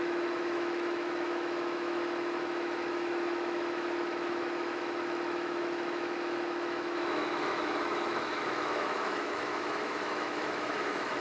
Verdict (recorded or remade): remade